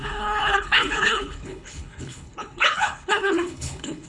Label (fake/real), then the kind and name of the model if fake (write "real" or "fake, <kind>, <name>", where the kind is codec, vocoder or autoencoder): fake, codec, HILCodec